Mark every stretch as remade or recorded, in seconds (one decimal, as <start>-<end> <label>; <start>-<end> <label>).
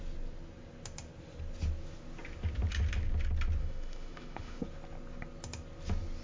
0.0-3.6 recorded; 3.6-4.6 remade; 4.6-6.2 recorded